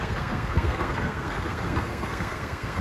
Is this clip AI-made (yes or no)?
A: yes